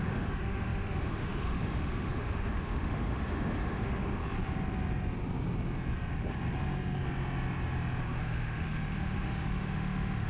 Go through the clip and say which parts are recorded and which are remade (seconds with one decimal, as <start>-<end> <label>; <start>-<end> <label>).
0.0-4.2 remade; 4.2-8.0 recorded; 8.0-10.3 remade